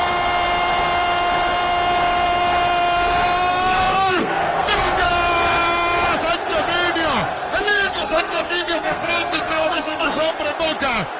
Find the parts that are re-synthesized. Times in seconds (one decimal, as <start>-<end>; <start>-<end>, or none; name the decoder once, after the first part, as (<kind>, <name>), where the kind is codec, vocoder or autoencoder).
3.5-5.1 (codec, SNAC); 7.6-10.3